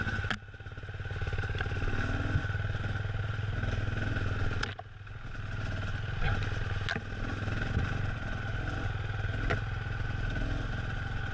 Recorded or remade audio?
recorded